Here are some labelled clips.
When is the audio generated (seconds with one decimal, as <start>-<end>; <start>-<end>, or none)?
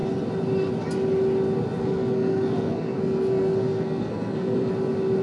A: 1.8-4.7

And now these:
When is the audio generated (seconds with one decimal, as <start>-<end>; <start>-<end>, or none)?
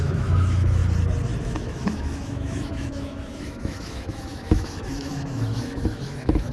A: 0.0-0.8; 1.4-6.5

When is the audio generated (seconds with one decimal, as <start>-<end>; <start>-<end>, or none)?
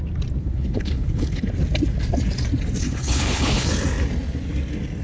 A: 0.4-1.4; 2.8-3.7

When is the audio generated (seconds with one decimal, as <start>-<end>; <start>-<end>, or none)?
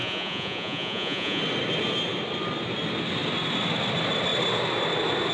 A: 0.0-1.4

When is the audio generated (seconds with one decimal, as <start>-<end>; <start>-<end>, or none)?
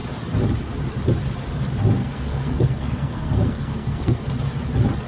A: 2.0-4.3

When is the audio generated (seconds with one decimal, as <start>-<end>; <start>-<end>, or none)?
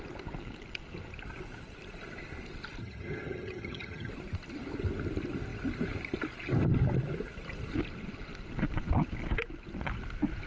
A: 2.8-4.1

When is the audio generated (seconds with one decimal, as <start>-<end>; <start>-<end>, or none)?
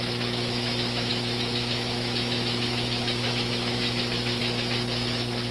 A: 0.0-5.5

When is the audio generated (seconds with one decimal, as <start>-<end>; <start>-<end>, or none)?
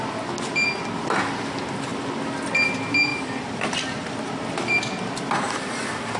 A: 1.9-2.5; 3.1-5.6